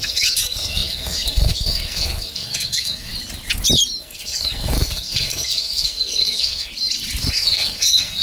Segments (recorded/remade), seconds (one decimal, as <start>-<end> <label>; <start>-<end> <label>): 0.0-3.1 remade; 3.1-4.0 recorded; 4.0-6.7 remade; 6.7-7.3 recorded; 7.3-8.2 remade